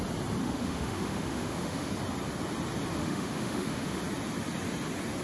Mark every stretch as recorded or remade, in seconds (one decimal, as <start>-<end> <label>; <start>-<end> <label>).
0.0-0.4 recorded; 0.4-1.9 remade; 1.9-3.0 recorded; 3.0-4.0 remade; 4.0-5.2 recorded